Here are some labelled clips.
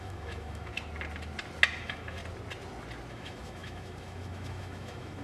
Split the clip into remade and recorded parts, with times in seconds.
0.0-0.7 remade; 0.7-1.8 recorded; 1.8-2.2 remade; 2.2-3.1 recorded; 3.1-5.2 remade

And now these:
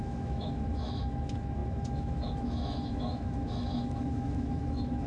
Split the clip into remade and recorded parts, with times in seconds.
0.0-5.1 remade

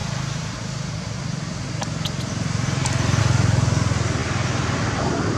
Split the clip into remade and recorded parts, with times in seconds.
0.0-5.4 recorded

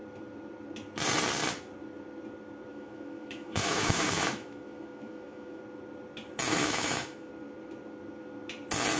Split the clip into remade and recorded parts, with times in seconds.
0.0-2.7 recorded; 2.7-5.6 remade; 5.6-6.6 recorded; 6.6-7.3 remade; 7.3-9.0 recorded